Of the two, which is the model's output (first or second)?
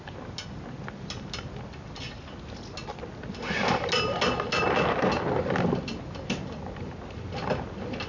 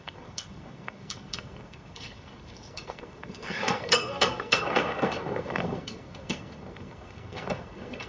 second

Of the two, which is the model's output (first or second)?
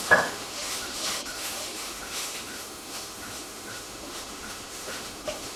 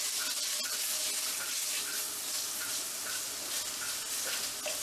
first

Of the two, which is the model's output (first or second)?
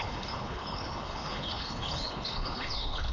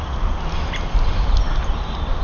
first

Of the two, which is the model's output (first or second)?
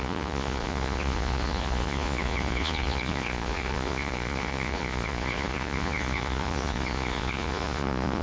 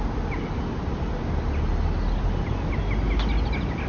first